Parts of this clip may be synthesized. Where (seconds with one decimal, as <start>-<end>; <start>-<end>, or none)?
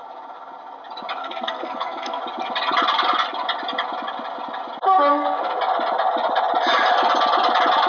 1.2-2.2; 5.1-5.6